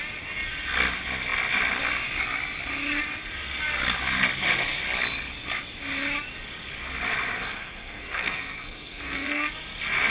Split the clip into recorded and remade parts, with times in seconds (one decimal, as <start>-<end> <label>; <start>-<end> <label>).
0.0-7.4 recorded; 7.4-9.5 remade; 9.5-10.1 recorded